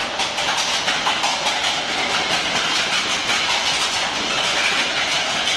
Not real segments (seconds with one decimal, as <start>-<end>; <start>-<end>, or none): 2.8-5.6

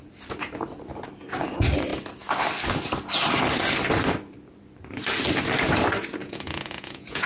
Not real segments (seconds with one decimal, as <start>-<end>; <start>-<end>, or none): 6.2-7.3

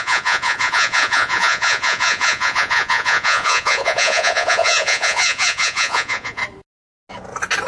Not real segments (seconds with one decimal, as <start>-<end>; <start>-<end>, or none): 0.0-6.4

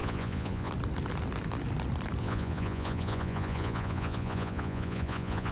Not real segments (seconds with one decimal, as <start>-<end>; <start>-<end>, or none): 0.0-0.7; 2.2-5.5

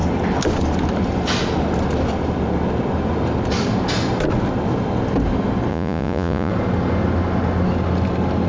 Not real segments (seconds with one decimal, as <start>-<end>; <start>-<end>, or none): 5.7-6.5

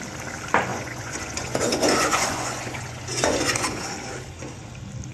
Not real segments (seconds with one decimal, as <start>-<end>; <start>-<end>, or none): 0.7-3.8

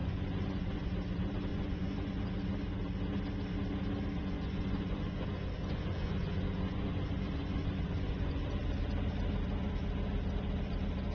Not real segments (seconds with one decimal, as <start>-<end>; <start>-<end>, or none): 0.0-0.9; 1.5-2.2; 4.2-8.4

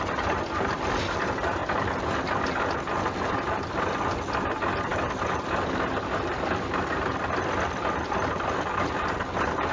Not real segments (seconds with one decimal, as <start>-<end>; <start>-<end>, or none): none